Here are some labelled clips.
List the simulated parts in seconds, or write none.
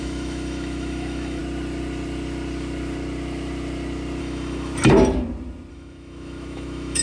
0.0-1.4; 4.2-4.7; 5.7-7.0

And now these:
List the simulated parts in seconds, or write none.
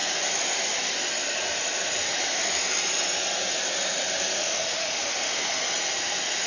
4.4-5.6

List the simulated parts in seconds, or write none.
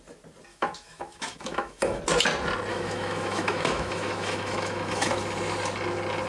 0.5-2.0; 2.7-5.2